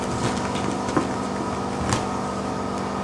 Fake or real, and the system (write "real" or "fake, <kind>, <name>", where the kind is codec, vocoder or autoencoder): real